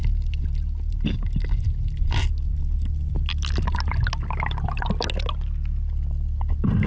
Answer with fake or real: real